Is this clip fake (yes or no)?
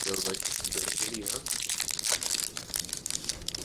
no